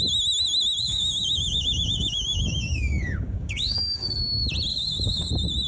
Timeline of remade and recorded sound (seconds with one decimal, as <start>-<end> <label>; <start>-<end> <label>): 0.0-0.8 recorded; 0.8-4.2 remade; 4.2-4.7 recorded; 4.7-5.3 remade; 5.3-5.7 recorded